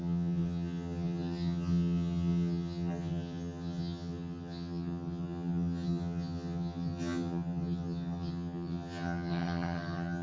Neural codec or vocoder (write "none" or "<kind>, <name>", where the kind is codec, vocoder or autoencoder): vocoder, HiFi-GAN